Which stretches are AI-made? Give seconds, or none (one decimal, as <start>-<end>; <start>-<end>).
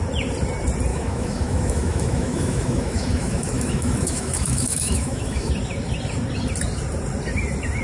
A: 0.9-5.5